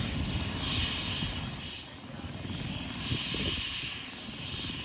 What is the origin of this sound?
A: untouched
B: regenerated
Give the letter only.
A